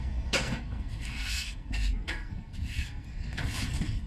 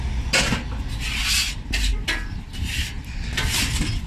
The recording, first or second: second